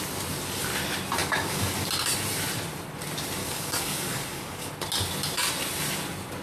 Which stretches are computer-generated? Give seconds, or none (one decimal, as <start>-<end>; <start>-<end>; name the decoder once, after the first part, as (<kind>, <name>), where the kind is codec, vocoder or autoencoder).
1.2-1.9 (codec, DAC); 3.4-4.7